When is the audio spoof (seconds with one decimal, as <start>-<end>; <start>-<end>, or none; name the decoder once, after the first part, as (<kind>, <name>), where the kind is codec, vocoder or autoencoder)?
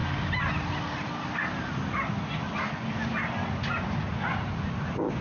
none